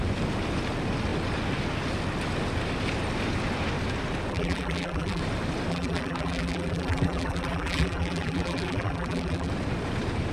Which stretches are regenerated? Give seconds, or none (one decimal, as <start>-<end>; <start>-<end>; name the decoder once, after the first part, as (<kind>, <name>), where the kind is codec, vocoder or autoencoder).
4.3-5.2 (vocoder, BigVGAN v2); 5.7-9.5